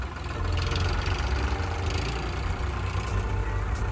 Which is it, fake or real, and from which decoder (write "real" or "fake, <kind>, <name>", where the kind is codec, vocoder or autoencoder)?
real